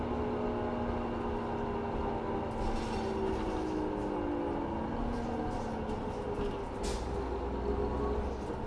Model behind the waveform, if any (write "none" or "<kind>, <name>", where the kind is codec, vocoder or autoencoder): none